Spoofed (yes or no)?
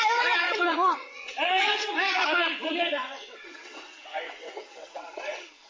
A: yes